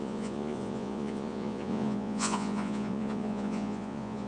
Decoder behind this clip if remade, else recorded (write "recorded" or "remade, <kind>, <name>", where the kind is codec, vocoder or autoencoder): remade, vocoder, Vocos